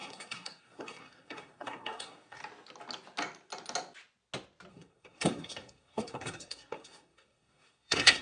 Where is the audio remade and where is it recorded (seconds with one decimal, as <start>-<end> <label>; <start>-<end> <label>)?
0.0-2.4 remade; 2.4-4.7 recorded; 4.7-8.2 remade

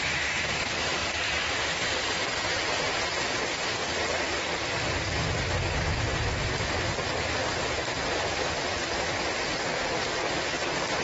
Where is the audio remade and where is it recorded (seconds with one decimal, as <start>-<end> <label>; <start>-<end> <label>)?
0.0-11.0 recorded

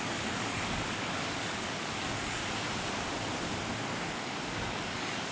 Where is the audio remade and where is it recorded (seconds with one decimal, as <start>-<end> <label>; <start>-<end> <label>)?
0.0-2.4 remade; 2.4-4.1 recorded; 4.1-5.3 remade

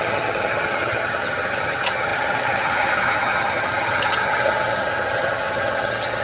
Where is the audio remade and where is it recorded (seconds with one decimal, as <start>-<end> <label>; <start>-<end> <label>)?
0.0-6.2 remade

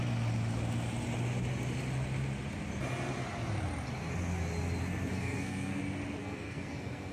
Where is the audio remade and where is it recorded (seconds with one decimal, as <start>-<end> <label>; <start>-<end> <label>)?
0.0-5.1 recorded; 5.1-5.8 remade; 5.8-6.2 recorded; 6.2-7.1 remade

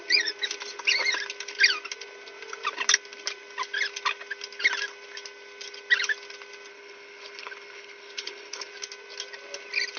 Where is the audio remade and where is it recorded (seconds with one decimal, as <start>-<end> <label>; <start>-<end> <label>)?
0.0-6.7 recorded; 6.7-8.7 remade; 8.7-10.0 recorded

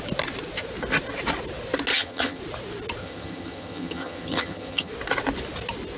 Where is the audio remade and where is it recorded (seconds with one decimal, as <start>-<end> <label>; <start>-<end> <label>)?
0.0-1.9 recorded; 1.9-2.4 remade; 2.4-3.0 recorded; 3.0-4.9 remade; 4.9-6.0 recorded